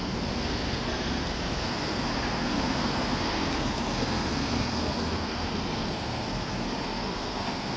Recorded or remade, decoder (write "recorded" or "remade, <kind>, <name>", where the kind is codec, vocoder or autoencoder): remade, codec, SNAC